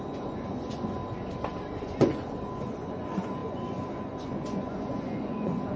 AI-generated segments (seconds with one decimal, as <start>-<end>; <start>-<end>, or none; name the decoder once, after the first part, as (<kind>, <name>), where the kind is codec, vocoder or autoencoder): 0.0-1.0 (vocoder, Vocos); 1.8-5.8